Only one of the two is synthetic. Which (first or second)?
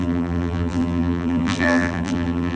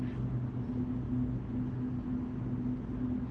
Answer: first